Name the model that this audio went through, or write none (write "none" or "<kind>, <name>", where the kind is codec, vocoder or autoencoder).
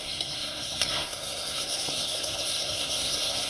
codec, SNAC